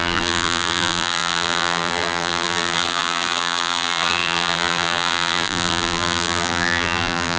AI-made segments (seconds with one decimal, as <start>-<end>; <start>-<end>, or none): 0.0-7.4